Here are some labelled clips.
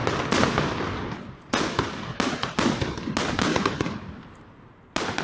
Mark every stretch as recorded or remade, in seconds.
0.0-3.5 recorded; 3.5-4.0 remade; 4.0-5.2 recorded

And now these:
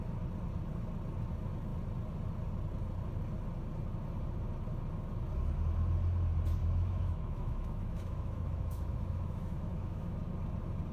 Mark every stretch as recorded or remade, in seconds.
0.0-6.6 recorded; 6.6-10.2 remade; 10.2-10.9 recorded

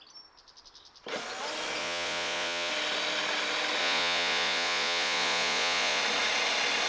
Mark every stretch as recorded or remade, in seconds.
0.0-1.8 recorded; 1.8-2.7 remade; 2.7-3.8 recorded; 3.8-6.0 remade; 6.0-6.9 recorded

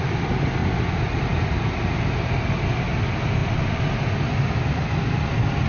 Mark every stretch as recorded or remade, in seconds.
0.0-5.7 recorded

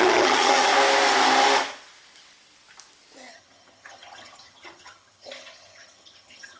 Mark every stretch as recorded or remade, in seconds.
0.0-0.7 remade; 0.7-3.3 recorded; 3.3-6.6 remade